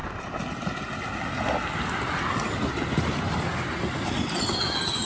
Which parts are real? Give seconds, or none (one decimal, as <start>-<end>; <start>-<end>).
0.0-5.0

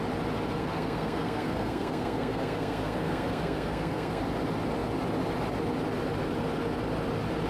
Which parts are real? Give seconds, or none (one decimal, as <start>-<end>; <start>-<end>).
0.0-0.6; 4.2-7.5

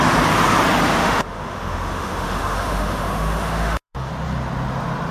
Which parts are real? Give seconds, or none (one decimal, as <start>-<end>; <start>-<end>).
0.0-1.0; 4.1-5.1

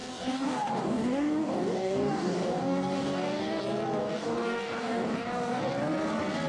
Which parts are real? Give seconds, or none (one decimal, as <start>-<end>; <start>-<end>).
3.6-4.0; 5.6-6.5

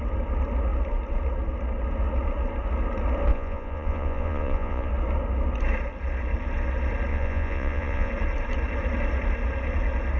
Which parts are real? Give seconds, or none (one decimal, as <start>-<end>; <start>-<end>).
0.0-3.3; 4.9-7.1; 8.1-10.2